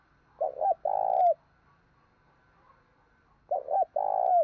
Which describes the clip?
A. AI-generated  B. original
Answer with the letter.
B